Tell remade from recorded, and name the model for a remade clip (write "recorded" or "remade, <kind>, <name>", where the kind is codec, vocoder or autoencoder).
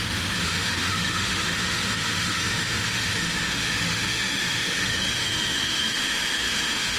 remade, autoencoder, DAC-VAE